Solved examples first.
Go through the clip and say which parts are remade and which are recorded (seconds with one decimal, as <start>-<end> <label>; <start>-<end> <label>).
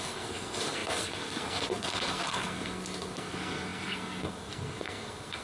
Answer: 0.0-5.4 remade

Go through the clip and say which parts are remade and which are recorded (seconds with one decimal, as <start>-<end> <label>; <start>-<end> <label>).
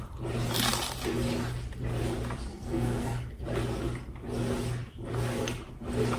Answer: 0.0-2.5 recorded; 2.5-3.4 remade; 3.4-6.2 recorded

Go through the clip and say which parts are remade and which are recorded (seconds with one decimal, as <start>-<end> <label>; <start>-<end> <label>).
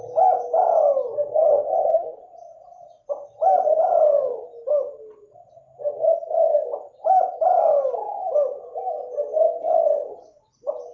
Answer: 0.0-1.5 recorded; 1.5-2.2 remade; 2.2-10.9 recorded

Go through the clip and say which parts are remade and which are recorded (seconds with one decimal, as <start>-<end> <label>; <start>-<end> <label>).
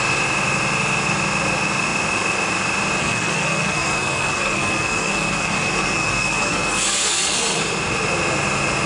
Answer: 0.0-3.0 recorded; 3.0-7.6 remade; 7.6-8.9 recorded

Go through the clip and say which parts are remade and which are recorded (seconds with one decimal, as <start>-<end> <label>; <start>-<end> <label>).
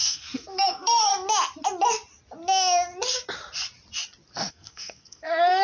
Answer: 0.0-1.1 remade; 1.1-4.5 recorded; 4.5-5.6 remade